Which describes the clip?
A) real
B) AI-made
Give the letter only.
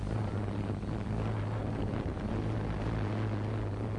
A